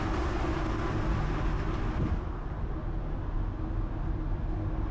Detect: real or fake real